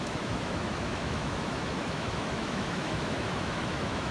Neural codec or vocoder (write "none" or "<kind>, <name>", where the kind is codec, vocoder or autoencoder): autoencoder, DAC-VAE